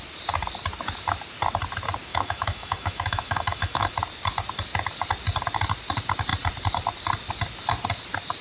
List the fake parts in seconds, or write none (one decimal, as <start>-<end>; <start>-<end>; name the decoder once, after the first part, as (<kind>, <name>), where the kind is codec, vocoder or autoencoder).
2.1-3.9 (autoencoder, DAC-VAE)